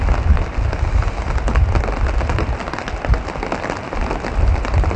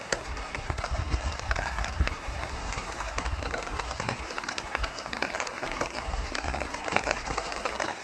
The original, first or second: first